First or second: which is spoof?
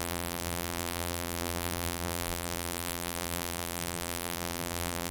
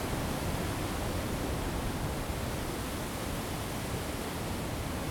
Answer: first